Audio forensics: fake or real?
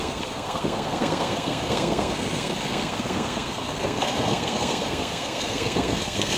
fake